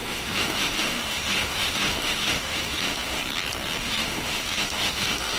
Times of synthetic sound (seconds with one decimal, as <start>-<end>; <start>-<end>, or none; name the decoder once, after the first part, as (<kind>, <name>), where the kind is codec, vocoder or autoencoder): 0.0-3.2 (autoencoder, DAC-VAE); 3.8-5.4